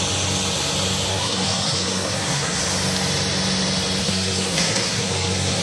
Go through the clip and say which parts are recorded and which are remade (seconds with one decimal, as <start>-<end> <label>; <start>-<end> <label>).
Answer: 0.0-1.1 recorded; 1.1-2.6 remade; 2.6-4.0 recorded; 4.0-5.6 remade